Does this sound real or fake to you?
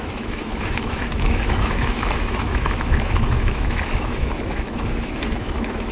fake